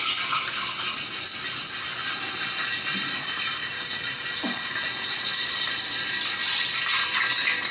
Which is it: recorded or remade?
recorded